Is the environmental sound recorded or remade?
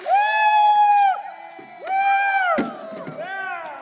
recorded